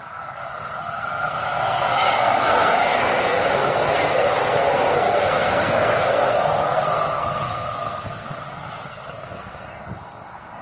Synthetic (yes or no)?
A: yes